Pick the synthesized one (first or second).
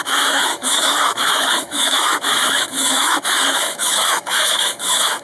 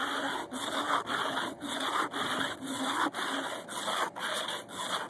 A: first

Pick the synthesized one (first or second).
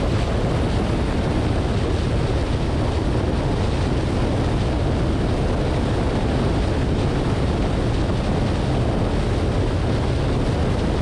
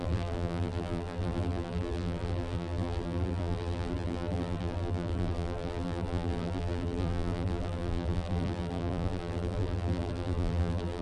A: second